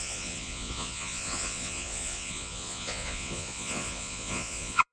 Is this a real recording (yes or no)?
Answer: no